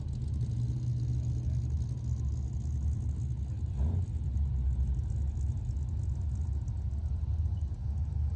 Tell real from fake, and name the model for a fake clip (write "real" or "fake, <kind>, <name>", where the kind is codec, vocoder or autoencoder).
real